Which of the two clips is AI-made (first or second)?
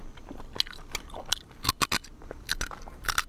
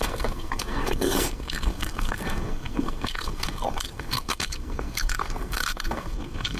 second